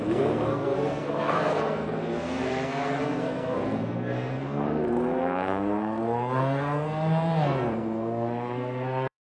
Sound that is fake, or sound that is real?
fake